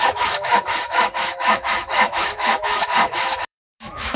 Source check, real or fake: fake